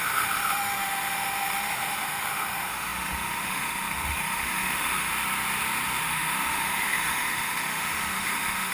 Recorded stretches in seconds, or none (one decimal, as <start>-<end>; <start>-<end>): 5.1-6.0